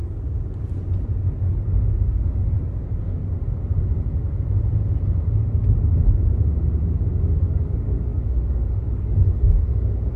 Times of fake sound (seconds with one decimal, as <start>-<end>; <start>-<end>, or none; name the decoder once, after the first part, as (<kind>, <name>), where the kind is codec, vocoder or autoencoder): 1.4-3.2 (codec, DAC); 7.2-10.2